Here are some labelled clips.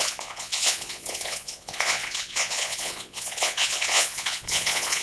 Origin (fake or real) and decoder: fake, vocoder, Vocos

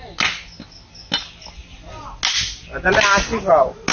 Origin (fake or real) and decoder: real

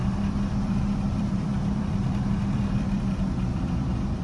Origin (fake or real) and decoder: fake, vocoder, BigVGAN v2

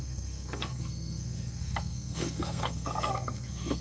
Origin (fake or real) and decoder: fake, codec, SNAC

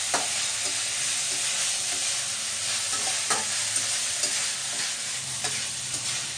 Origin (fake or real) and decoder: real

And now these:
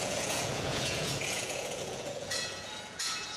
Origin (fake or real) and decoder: fake, vocoder, Vocos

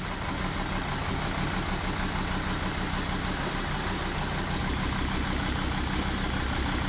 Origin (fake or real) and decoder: real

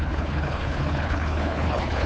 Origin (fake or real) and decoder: fake, codec, HILCodec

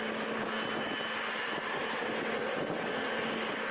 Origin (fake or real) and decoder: real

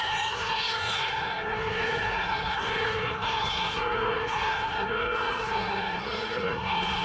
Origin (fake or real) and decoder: fake, codec, SNAC